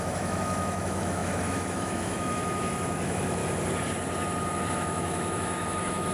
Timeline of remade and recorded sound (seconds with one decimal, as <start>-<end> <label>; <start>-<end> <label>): 0.0-3.4 remade; 3.4-4.7 recorded; 4.7-6.1 remade

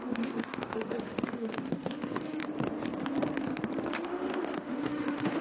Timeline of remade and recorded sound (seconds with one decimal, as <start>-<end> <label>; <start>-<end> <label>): 0.0-2.4 remade; 2.4-3.9 recorded; 3.9-5.4 remade

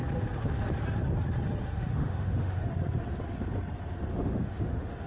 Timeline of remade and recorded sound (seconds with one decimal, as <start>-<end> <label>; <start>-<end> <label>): 0.0-1.6 recorded; 1.6-2.7 remade; 2.7-4.1 recorded; 4.1-5.1 remade

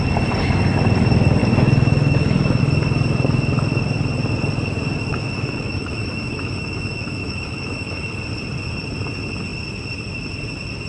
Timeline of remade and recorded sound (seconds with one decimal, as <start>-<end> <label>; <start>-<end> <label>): 0.0-1.4 recorded; 1.4-2.6 remade; 2.6-5.1 recorded; 5.1-8.1 remade; 8.1-10.9 recorded

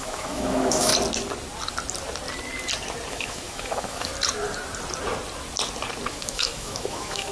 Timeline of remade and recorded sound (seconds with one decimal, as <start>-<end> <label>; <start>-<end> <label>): 0.0-0.9 remade; 0.9-3.1 recorded; 3.1-4.1 remade; 4.1-6.1 recorded; 6.1-7.3 remade

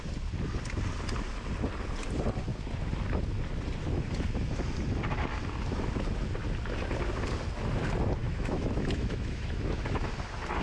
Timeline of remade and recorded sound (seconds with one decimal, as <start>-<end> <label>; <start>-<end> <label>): 0.0-8.2 recorded; 8.2-10.1 remade; 10.1-10.6 recorded

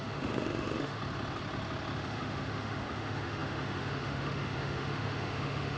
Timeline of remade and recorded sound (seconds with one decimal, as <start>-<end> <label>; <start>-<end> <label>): 0.0-1.0 remade; 1.0-2.0 recorded; 2.0-5.8 remade

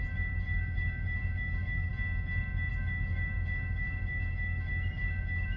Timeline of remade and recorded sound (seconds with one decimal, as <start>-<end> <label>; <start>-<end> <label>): 0.0-1.9 remade; 1.9-2.7 recorded; 2.7-5.6 remade